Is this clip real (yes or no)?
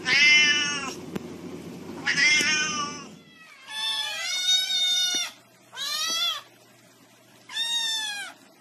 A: yes